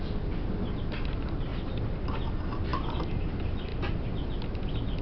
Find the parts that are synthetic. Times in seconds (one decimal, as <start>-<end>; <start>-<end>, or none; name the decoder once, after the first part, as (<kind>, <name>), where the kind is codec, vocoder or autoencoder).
none